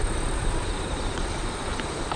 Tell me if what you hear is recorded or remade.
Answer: recorded